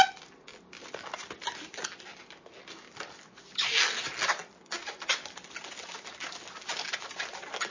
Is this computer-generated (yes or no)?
no